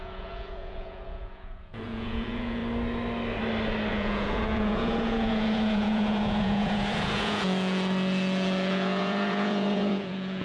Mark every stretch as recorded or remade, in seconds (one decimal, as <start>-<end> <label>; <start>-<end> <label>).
0.0-2.6 remade; 2.6-3.9 recorded; 3.9-10.4 remade

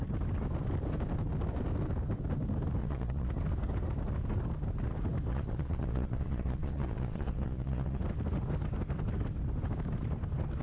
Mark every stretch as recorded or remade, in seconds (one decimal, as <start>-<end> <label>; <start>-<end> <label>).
0.0-2.8 recorded; 2.8-3.3 remade; 3.3-5.3 recorded; 5.3-8.0 remade; 8.0-10.6 recorded

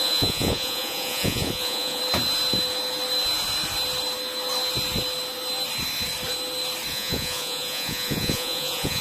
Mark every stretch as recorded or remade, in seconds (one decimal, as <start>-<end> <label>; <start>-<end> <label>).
0.0-2.0 remade; 2.0-6.9 recorded; 6.9-9.0 remade

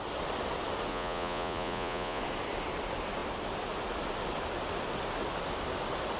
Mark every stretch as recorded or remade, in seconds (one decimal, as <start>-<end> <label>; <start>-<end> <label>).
0.0-0.9 recorded; 0.9-2.2 remade; 2.2-6.2 recorded

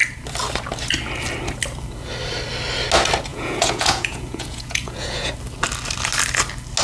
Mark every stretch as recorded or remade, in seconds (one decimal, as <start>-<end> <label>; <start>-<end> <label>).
0.0-3.3 recorded; 3.3-5.3 remade; 5.3-6.8 recorded